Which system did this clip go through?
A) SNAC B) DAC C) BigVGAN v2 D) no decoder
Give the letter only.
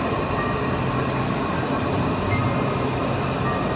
D